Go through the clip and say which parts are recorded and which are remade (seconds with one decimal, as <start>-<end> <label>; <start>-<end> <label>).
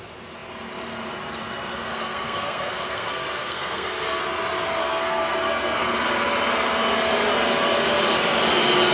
0.0-1.9 recorded; 1.9-4.2 remade; 4.2-4.8 recorded; 4.8-5.9 remade; 5.9-8.9 recorded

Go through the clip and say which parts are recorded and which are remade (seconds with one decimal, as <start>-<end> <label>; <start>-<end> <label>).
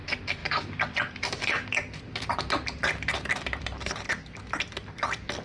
0.0-5.4 recorded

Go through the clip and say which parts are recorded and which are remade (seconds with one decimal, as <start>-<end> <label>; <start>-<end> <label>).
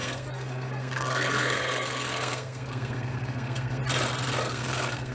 0.0-3.8 remade; 3.8-4.4 recorded; 4.4-5.1 remade